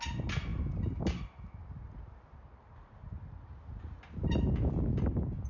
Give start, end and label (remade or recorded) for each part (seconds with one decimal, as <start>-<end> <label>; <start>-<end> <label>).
0.0-5.5 recorded